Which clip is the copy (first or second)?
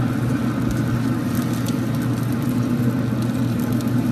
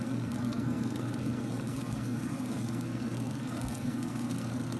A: second